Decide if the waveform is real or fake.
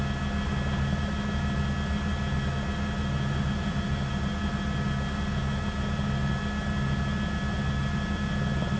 real